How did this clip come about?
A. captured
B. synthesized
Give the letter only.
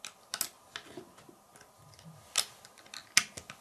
A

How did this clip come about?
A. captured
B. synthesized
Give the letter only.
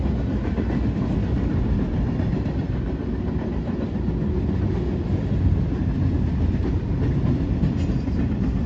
A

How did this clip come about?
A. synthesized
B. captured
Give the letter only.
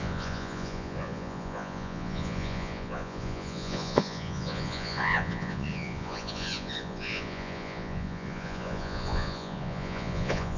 A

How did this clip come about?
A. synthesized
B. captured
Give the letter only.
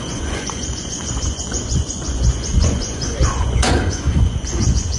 A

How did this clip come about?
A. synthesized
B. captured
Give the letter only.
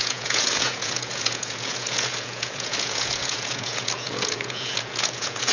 A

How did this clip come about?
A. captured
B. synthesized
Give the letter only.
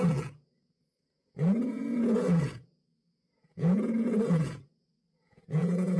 B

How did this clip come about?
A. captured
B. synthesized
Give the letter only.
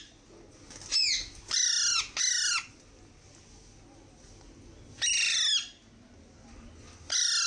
A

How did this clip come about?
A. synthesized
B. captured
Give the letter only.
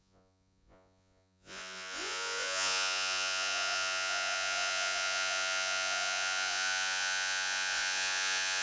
A